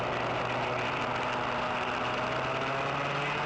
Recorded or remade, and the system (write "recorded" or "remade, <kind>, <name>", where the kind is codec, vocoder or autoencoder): recorded